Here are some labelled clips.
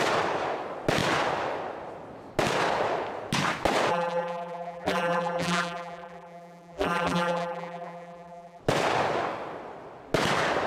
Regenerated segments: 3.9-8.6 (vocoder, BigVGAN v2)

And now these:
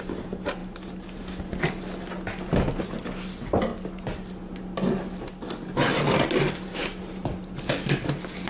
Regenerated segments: none

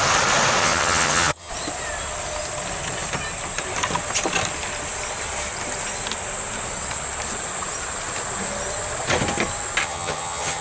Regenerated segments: 0.6-1.5 (vocoder, HiFi-GAN); 9.8-10.6

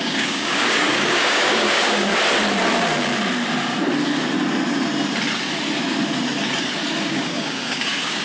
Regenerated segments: 0.0-2.1 (codec, DAC); 7.0-8.2

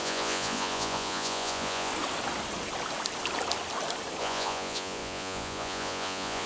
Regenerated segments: 0.0-1.9 (vocoder, Vocos); 4.2-6.5